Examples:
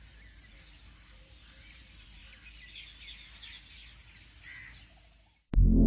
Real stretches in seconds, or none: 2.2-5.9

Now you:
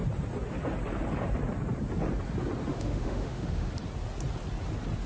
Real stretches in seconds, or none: 0.0-2.7; 3.7-5.1

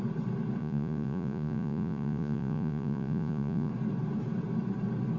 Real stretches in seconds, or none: 0.0-0.6; 3.7-5.2

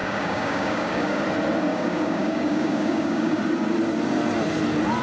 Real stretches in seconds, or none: 1.2-1.7; 3.4-5.0

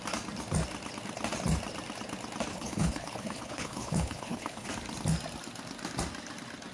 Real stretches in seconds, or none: 0.0-2.5; 4.7-6.7